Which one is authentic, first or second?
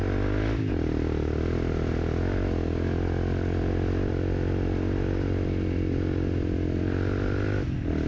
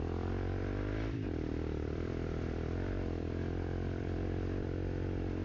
first